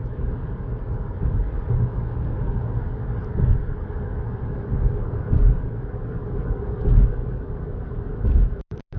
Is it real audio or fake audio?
fake